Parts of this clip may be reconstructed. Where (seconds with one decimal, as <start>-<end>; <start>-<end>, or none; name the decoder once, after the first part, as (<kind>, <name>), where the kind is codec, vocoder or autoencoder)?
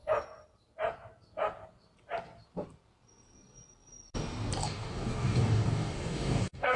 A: 4.6-6.8 (codec, DAC)